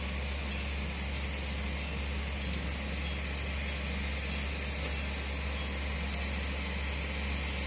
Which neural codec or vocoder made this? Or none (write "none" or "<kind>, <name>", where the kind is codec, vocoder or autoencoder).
none